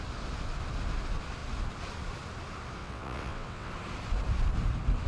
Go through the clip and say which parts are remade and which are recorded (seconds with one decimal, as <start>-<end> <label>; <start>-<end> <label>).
0.0-2.8 recorded; 2.8-3.7 remade; 3.7-5.1 recorded